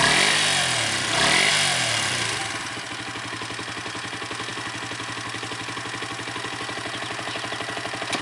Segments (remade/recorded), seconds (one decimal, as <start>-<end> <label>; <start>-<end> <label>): 0.0-8.2 recorded